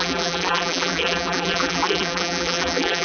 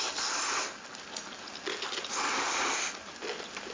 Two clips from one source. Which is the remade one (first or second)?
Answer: first